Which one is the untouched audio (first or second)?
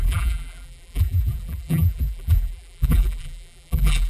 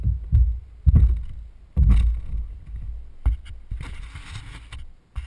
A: second